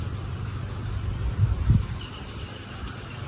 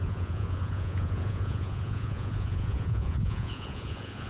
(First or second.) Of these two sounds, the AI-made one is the second